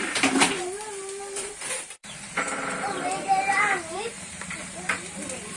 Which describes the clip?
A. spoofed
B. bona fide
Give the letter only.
A